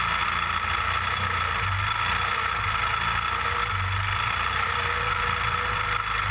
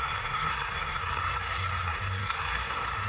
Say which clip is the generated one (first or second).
second